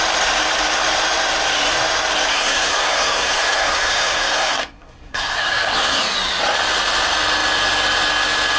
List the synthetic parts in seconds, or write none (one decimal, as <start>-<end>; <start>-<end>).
2.3-6.0